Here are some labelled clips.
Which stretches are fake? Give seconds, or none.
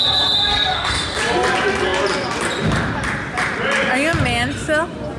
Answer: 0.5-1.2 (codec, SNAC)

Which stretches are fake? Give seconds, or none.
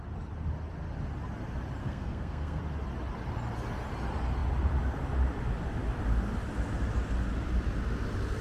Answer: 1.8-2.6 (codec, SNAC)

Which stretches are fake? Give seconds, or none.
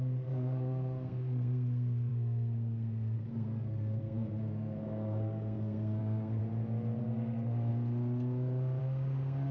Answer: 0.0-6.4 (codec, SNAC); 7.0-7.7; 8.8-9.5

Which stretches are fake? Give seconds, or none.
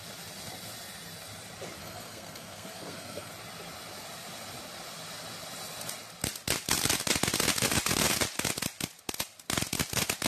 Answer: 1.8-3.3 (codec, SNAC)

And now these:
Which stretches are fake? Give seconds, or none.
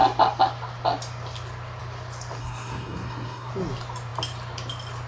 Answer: 2.4-3.5 (codec, SNAC)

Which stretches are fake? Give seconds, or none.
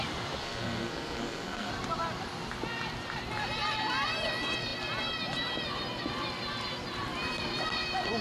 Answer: 0.4-1.7 (codec, SNAC)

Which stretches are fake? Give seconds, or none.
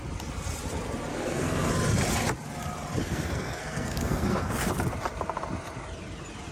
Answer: 1.1-1.7 (codec, SNAC); 3.0-4.7